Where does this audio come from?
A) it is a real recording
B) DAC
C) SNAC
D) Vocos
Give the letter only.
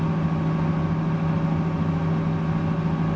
A